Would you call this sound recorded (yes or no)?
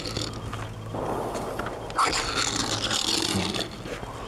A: yes